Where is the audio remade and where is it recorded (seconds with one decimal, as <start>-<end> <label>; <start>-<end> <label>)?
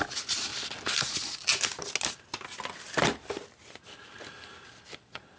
0.0-0.5 remade; 0.5-1.0 recorded; 1.0-1.5 remade; 1.5-4.7 recorded; 4.7-5.4 remade